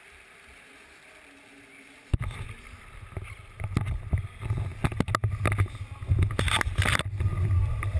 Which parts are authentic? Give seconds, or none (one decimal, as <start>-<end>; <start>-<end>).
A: 0.0-8.0